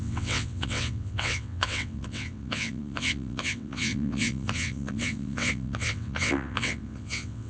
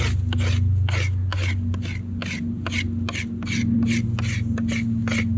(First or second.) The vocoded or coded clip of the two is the first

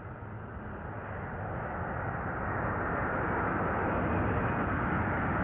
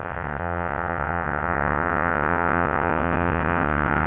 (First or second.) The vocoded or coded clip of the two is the second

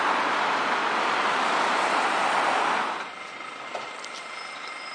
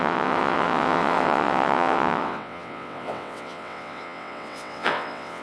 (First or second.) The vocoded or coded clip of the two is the second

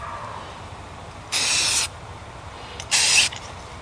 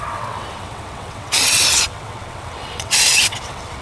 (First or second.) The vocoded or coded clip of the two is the second